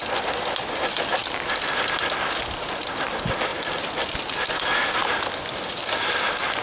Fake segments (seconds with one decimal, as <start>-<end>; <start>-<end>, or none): 1.2-1.8; 3.5-4.1